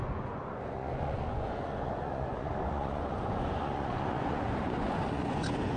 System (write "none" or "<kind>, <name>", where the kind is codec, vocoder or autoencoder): vocoder, Vocos